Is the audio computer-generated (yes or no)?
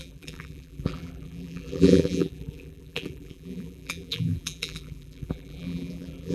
yes